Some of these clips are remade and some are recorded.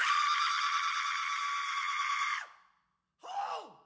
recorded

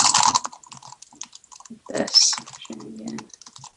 recorded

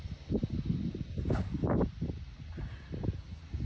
recorded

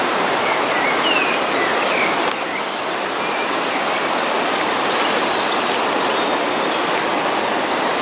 recorded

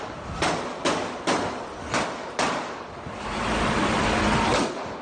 recorded